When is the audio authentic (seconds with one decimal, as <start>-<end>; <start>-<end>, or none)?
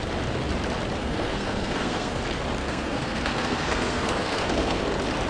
0.0-1.0; 2.2-2.6; 4.8-5.3